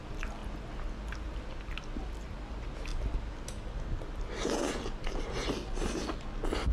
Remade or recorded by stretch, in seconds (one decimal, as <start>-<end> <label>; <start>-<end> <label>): 0.0-6.7 recorded